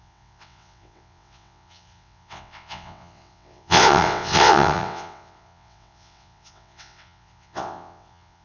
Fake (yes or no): yes